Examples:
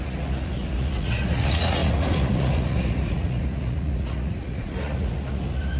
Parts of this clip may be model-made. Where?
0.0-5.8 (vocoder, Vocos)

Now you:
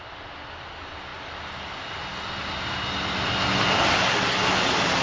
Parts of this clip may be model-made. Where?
none

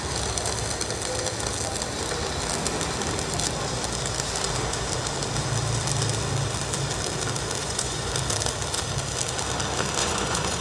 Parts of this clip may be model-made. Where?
7.6-8.1 (vocoder, Vocos); 10.0-10.6

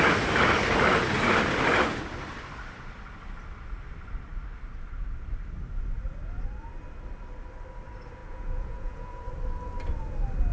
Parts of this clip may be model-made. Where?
8.2-9.2 (vocoder, Vocos)